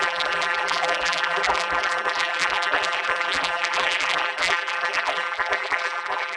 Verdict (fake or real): fake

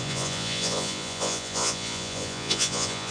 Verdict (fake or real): fake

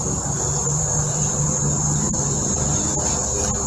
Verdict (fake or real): fake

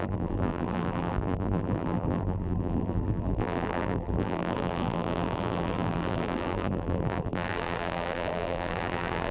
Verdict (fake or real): fake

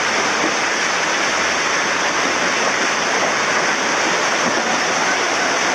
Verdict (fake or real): real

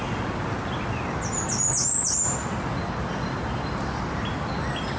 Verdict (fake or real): real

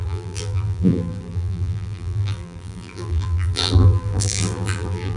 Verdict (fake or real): fake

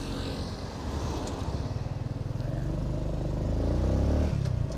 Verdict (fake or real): real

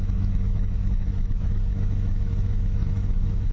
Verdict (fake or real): fake